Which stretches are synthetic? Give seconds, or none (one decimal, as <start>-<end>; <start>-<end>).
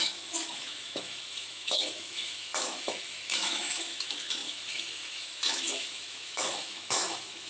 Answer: 0.0-7.5